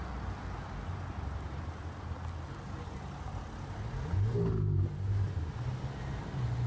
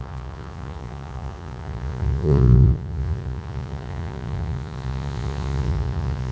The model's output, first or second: second